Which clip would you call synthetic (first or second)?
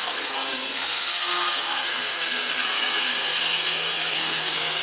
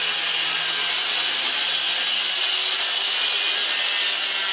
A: first